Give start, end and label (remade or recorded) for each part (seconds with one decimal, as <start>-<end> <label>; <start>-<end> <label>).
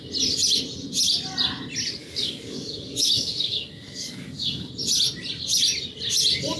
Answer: 0.0-2.0 recorded; 2.0-4.7 remade; 4.7-6.6 recorded